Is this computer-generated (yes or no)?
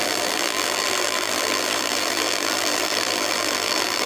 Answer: yes